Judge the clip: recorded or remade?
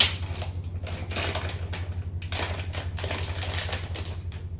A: recorded